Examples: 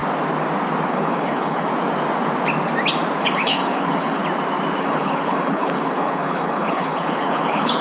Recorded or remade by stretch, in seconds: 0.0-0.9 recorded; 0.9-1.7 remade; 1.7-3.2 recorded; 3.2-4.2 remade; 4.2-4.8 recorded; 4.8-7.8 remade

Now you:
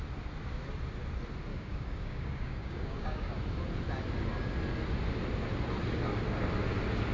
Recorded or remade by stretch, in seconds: 0.0-1.5 recorded; 1.5-3.4 remade; 3.4-7.1 recorded

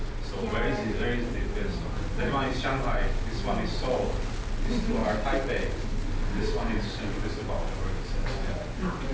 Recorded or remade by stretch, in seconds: 0.0-9.1 recorded

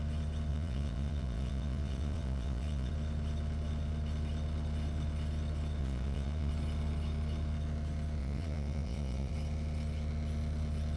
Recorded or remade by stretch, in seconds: 0.0-0.5 recorded; 0.5-2.9 remade; 2.9-5.8 recorded; 5.8-6.5 remade; 6.5-8.2 recorded; 8.2-9.3 remade; 9.3-11.0 recorded

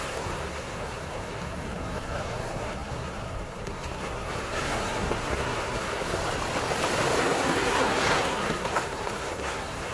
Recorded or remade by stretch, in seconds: 0.0-6.2 remade; 6.2-7.2 recorded; 7.2-9.9 remade

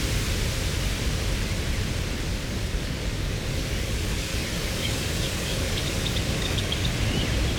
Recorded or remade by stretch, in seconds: 0.0-2.3 recorded; 2.3-6.9 remade; 6.9-7.6 recorded